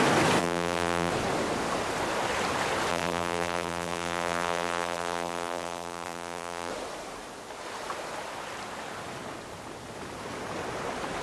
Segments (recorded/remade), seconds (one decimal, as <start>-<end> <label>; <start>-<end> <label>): 0.0-0.4 recorded; 0.4-1.1 remade; 1.1-2.9 recorded; 2.9-6.7 remade; 6.7-11.2 recorded